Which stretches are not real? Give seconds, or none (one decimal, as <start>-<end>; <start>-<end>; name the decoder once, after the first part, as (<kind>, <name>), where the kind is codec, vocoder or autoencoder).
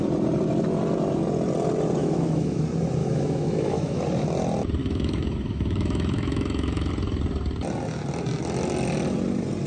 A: 2.0-2.6 (autoencoder, DAC-VAE); 3.0-4.0; 4.8-6.9